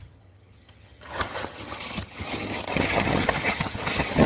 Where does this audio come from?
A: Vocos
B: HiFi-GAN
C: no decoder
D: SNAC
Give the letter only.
B